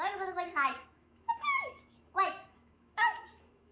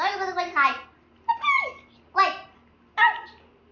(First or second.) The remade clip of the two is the first